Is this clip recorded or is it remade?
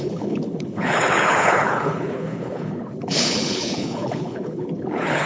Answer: remade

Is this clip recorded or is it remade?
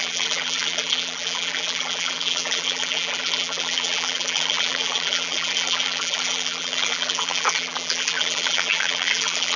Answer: remade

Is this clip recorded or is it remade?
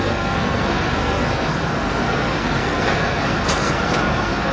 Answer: remade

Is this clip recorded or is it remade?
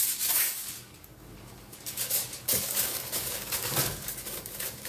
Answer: remade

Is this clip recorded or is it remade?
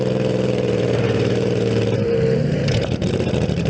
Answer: remade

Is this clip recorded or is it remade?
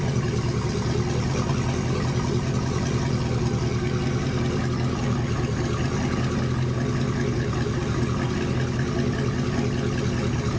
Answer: recorded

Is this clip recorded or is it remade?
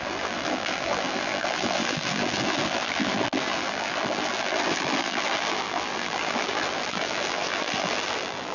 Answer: remade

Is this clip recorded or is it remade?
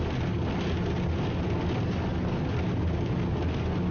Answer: recorded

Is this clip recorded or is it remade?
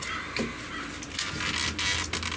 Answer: recorded